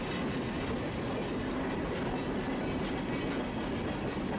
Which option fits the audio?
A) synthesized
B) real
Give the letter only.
B